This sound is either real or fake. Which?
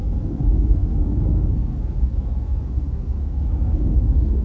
fake